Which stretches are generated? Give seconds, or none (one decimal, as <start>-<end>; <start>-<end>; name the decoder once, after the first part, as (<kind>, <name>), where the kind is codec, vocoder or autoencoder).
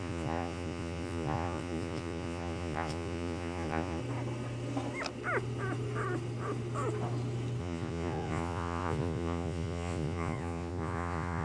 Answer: 0.0-4.0 (vocoder, Vocos); 7.6-11.4